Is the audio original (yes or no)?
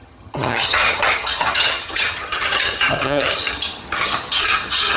no